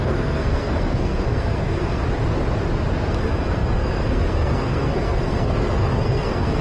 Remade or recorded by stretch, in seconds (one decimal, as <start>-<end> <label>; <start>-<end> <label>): 0.0-2.0 remade; 2.0-3.1 recorded; 3.1-6.6 remade

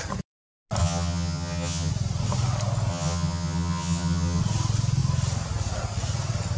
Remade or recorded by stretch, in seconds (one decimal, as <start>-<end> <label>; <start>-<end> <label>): 0.0-0.8 recorded; 0.8-1.9 remade; 1.9-2.9 recorded; 2.9-4.4 remade; 4.4-6.6 recorded

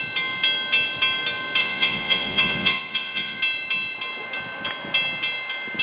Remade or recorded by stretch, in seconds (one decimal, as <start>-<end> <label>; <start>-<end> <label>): 0.0-1.6 recorded; 1.6-3.4 remade; 3.4-5.8 recorded

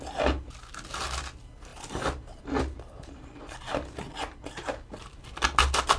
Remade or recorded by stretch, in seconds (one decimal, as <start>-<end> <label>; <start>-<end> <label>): 0.0-1.7 recorded; 1.7-5.2 remade; 5.2-6.0 recorded

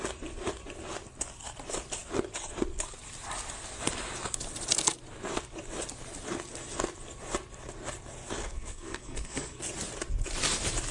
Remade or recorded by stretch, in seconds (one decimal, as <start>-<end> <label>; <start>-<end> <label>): 0.0-8.4 recorded; 8.4-9.6 remade; 9.6-10.9 recorded